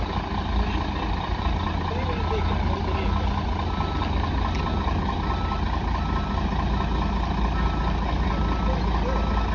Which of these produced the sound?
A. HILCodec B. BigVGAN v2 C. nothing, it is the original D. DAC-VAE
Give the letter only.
C